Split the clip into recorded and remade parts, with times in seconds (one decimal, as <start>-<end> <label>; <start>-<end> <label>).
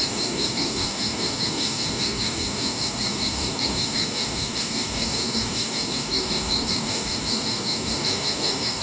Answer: 0.0-8.8 remade